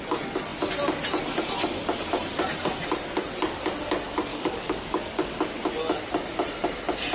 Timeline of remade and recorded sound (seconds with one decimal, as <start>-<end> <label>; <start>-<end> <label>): 0.0-4.3 recorded; 4.3-5.4 remade; 5.4-7.1 recorded